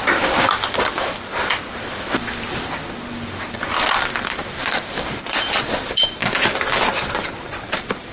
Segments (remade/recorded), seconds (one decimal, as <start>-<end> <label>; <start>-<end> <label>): 0.0-6.2 remade; 6.2-6.7 recorded; 6.7-8.1 remade